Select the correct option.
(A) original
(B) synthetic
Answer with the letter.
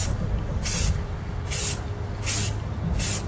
A